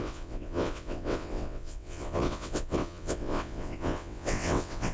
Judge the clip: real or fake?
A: fake